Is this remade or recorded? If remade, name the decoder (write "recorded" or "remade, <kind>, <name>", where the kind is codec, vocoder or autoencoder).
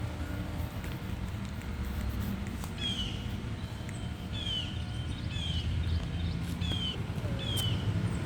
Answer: remade, vocoder, BigVGAN v2